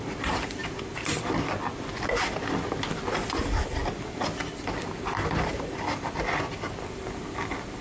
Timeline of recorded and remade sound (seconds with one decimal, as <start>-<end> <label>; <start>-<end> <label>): 0.0-7.8 recorded